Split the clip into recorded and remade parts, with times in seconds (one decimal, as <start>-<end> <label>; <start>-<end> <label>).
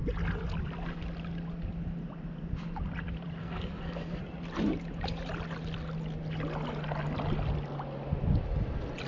0.0-3.4 recorded; 3.4-4.2 remade; 4.2-9.1 recorded